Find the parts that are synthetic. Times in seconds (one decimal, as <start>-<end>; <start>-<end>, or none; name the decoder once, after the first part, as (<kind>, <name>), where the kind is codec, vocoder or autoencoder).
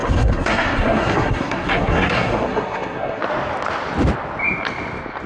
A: 0.0-3.2 (codec, SNAC)